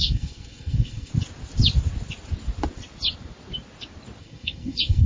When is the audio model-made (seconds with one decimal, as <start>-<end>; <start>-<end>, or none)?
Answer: 0.0-1.1; 4.2-5.1